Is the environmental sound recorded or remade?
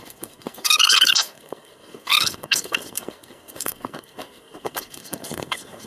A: remade